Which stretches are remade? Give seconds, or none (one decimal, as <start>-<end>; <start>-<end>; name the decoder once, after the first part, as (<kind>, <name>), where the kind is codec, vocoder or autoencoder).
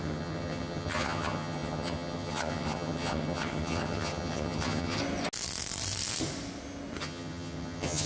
0.0-5.0 (vocoder, HiFi-GAN); 7.0-8.1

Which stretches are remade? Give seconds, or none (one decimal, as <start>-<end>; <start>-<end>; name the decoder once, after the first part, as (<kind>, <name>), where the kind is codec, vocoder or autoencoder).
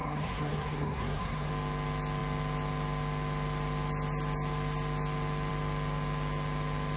0.0-1.5 (codec, SNAC)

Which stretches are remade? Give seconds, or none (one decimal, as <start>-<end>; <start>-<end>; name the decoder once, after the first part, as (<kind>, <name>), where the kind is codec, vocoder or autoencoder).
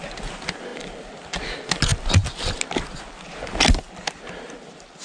none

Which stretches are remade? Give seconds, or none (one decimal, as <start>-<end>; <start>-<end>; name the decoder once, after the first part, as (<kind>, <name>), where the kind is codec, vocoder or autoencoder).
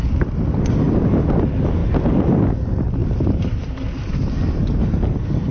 none